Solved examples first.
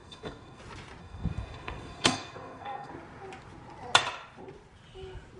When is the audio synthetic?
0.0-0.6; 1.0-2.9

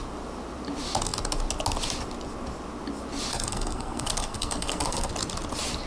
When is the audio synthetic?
3.3-5.1